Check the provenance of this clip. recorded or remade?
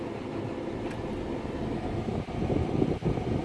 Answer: recorded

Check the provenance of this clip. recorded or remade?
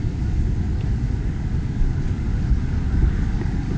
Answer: remade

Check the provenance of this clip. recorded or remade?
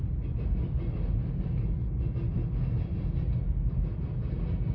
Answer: recorded